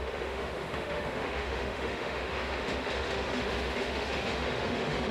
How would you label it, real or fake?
fake